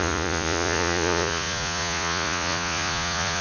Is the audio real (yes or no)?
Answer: no